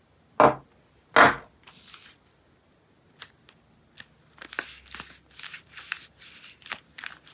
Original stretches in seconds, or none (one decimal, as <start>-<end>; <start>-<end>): 0.0-7.3